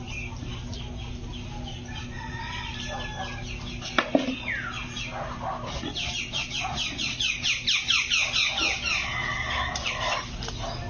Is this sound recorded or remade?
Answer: recorded